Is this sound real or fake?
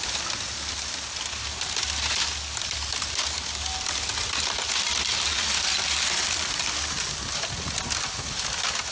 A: real